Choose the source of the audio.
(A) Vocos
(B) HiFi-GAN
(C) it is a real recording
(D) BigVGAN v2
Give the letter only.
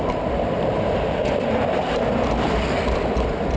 D